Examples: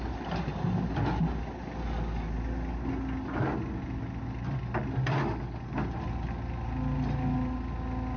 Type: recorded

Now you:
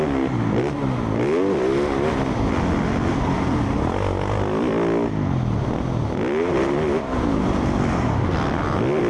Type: recorded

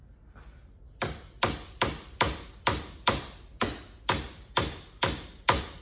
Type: recorded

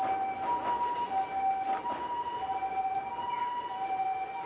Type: recorded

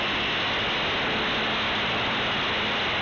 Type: recorded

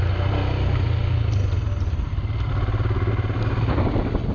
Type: recorded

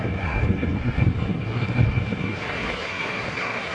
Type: remade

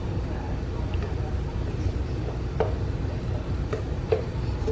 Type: recorded